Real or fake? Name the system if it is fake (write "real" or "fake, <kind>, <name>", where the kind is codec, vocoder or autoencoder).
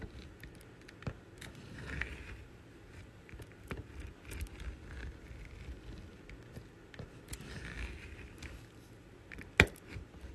real